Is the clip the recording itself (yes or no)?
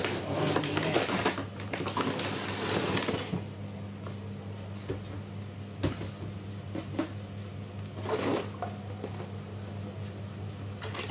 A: yes